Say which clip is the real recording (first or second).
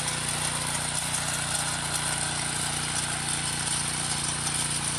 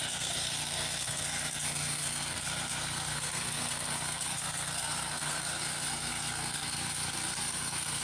first